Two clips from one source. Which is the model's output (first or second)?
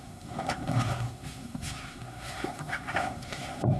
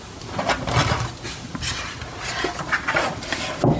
first